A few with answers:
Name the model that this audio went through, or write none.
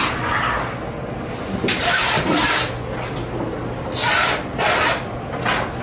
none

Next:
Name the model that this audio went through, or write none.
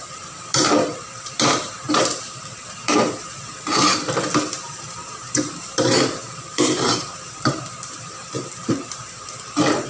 vocoder, BigVGAN v2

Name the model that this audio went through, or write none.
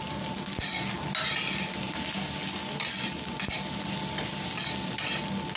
none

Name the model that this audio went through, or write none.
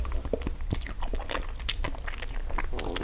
none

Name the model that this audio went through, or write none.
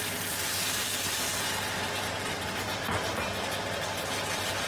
none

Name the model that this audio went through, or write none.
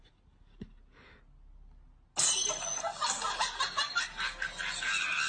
none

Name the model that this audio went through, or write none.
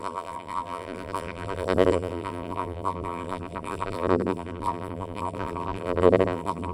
vocoder, BigVGAN v2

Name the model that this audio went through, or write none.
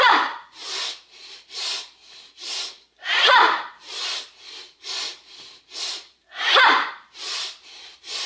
vocoder, BigVGAN v2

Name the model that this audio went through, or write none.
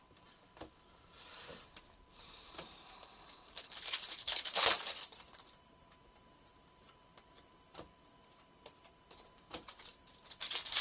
vocoder, BigVGAN v2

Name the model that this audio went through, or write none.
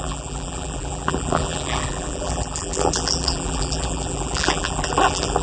vocoder, BigVGAN v2